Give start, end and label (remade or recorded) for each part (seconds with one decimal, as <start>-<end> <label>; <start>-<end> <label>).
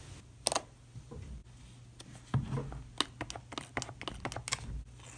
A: 0.0-5.2 recorded